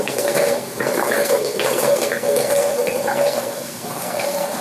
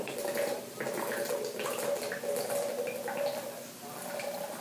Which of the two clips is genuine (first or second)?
second